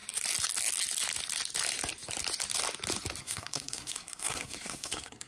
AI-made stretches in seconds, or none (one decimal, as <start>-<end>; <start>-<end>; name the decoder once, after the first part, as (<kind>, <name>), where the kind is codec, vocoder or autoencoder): 3.2-5.3 (codec, SNAC)